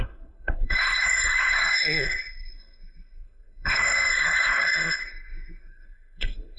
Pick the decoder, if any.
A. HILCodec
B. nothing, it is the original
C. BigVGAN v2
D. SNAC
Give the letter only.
D